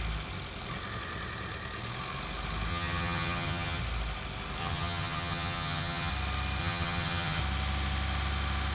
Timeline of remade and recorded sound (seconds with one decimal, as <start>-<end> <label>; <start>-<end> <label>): 0.0-2.7 recorded; 2.7-3.8 remade; 3.8-4.6 recorded; 4.6-6.1 remade; 6.1-6.6 recorded; 6.6-7.4 remade; 7.4-8.7 recorded